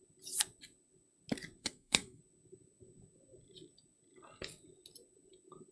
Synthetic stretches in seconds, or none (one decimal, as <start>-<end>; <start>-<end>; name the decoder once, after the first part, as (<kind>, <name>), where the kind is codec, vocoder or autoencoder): 1.6-2.2 (codec, SNAC)